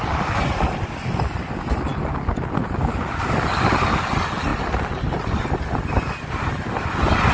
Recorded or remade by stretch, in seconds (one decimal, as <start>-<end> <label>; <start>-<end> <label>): 0.0-7.3 recorded